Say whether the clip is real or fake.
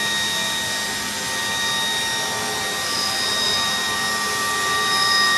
real